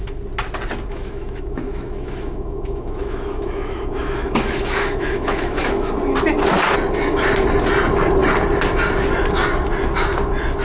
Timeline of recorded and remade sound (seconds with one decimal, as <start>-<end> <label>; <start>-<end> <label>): 0.0-0.9 recorded; 0.9-5.9 remade; 5.9-10.6 recorded